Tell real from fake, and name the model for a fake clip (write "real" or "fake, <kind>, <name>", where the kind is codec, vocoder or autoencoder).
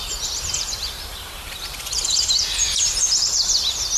fake, vocoder, BigVGAN v2